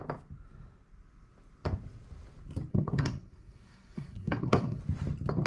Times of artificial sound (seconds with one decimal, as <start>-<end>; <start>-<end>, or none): 2.7-4.8

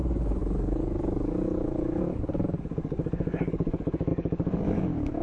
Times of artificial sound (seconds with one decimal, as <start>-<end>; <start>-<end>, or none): 0.0-5.2

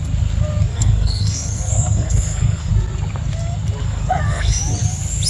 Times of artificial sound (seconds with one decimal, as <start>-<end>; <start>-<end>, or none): 0.7-2.7; 3.8-4.6

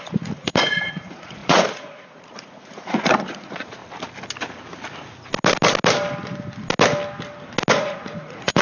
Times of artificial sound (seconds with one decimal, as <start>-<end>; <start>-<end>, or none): 0.0-3.8; 7.7-8.6

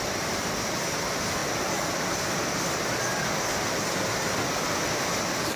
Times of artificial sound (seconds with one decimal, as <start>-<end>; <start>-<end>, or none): none